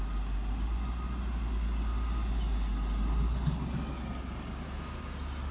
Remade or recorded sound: recorded